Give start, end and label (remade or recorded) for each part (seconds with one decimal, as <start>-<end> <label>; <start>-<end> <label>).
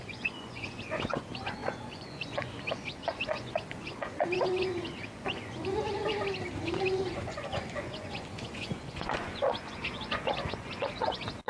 0.0-6.0 remade; 6.0-6.6 recorded; 6.6-11.5 remade